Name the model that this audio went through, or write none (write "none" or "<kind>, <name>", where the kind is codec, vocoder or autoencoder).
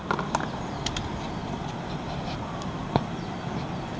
none